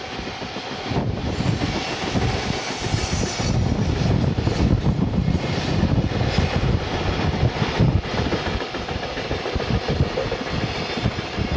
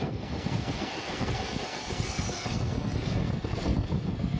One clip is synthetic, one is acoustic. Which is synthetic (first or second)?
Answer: second